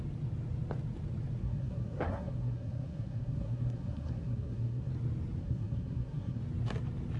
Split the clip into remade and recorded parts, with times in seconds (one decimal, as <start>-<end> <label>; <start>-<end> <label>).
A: 0.0-1.4 recorded; 1.4-4.9 remade; 4.9-5.4 recorded; 5.4-6.4 remade; 6.4-7.2 recorded